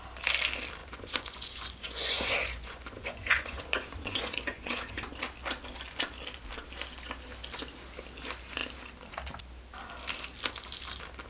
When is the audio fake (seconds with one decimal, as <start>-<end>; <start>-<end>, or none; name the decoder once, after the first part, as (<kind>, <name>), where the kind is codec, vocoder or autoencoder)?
0.8-4.9 (vocoder, Vocos)